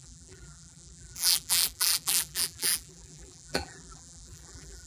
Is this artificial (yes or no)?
yes